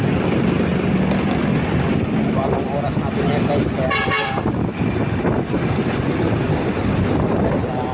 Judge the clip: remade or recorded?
recorded